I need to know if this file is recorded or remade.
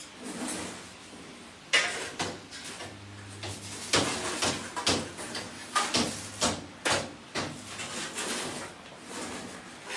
recorded